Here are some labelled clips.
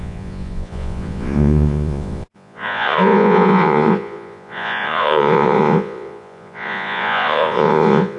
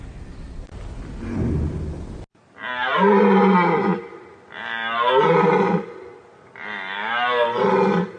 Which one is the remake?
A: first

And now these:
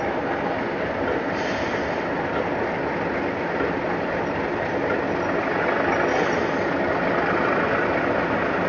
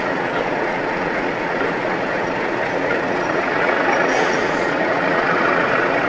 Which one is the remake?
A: second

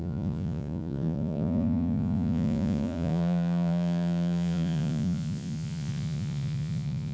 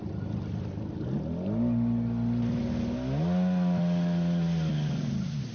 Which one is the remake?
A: first